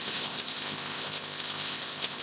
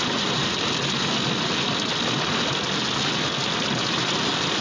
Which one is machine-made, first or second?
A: first